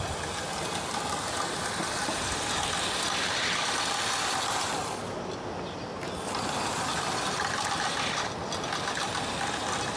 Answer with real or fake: real